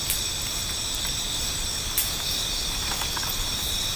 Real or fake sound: fake